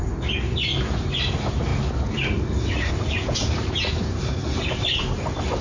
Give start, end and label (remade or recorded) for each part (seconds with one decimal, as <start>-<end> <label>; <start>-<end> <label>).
0.0-1.1 recorded; 1.1-1.7 remade; 1.7-2.9 recorded; 2.9-5.6 remade